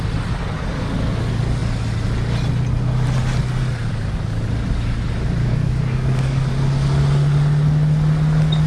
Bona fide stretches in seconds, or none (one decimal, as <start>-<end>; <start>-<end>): 0.0-5.4; 6.5-8.7